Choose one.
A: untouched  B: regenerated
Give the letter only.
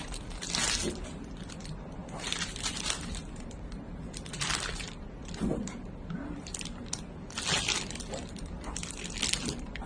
A